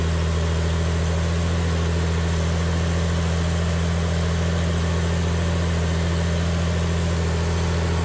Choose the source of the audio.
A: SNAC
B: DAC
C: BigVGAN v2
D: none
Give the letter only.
D